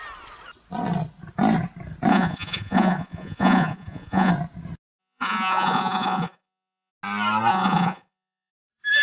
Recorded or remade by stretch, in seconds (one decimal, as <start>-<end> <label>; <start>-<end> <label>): 0.0-2.1 recorded; 2.1-4.3 remade; 4.3-5.0 recorded; 5.0-6.9 remade; 6.9-7.5 recorded; 7.5-8.5 remade; 8.5-9.0 recorded